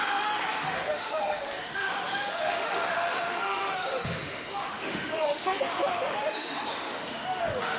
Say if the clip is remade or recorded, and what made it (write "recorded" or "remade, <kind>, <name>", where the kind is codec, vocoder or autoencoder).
remade, autoencoder, DAC-VAE